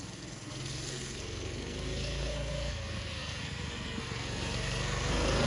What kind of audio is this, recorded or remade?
remade